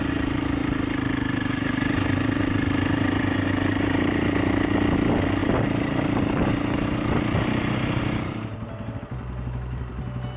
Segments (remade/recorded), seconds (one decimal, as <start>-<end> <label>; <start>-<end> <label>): 0.0-0.6 recorded; 0.6-4.7 remade; 4.7-5.4 recorded; 5.4-9.0 remade; 9.0-10.4 recorded